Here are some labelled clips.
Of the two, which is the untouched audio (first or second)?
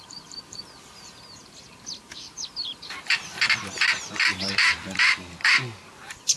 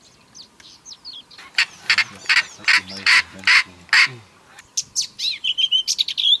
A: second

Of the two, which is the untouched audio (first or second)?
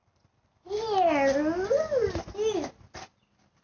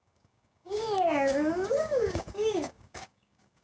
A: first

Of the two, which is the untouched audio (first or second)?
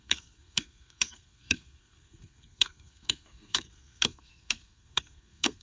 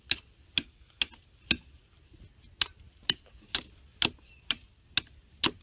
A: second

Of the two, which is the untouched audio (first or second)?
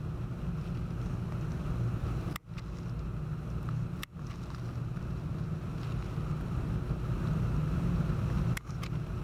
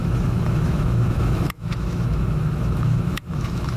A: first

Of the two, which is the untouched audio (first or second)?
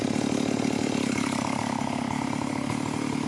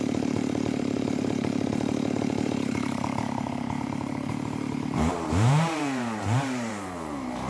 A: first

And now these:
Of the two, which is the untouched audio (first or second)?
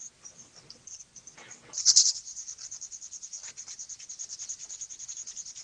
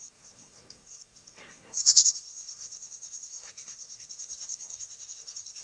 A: first